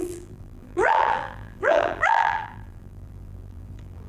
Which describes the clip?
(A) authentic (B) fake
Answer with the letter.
B